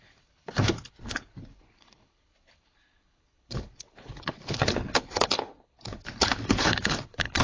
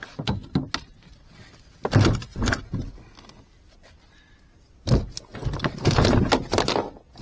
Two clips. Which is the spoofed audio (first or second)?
first